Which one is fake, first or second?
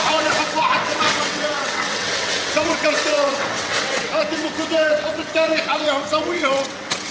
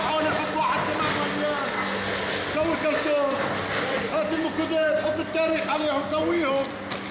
first